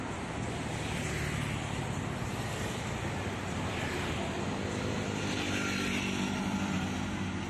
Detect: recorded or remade recorded